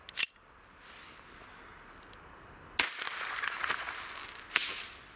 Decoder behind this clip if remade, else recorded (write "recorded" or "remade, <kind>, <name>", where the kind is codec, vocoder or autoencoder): recorded